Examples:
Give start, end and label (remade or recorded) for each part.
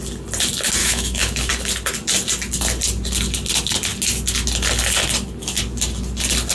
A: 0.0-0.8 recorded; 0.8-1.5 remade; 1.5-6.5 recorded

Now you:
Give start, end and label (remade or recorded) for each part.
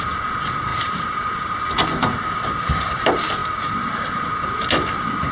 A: 0.0-0.7 recorded; 0.7-2.6 remade; 2.6-3.4 recorded; 3.4-4.3 remade; 4.3-5.3 recorded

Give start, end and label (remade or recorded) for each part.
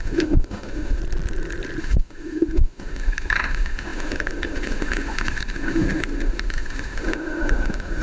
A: 0.0-1.0 remade; 1.0-1.8 recorded; 1.8-8.0 remade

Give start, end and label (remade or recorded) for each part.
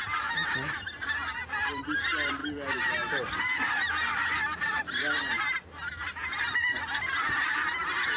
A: 0.0-8.2 recorded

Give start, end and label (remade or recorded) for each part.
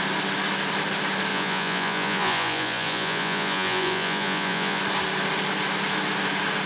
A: 0.0-1.3 recorded; 1.3-4.8 remade; 4.8-6.7 recorded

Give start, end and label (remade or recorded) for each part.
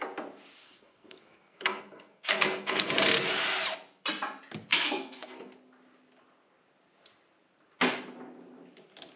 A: 0.0-0.6 recorded; 0.6-2.9 remade; 2.9-4.7 recorded; 4.7-5.5 remade; 5.5-9.2 recorded